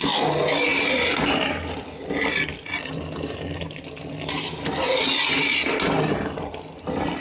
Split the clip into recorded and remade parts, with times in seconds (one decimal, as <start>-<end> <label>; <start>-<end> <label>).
0.0-7.2 recorded